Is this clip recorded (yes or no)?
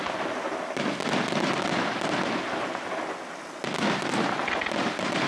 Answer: yes